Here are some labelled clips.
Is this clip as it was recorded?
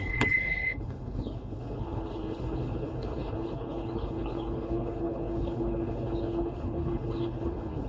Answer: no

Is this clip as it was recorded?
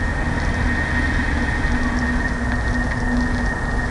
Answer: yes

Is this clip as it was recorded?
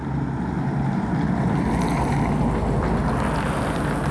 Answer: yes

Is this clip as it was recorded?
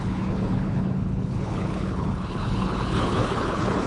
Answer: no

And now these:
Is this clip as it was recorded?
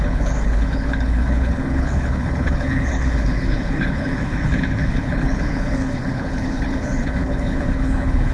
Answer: no